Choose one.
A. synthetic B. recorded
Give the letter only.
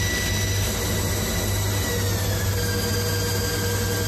B